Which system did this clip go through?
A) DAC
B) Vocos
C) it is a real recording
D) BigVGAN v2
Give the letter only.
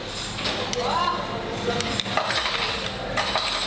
C